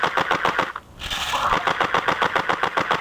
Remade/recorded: recorded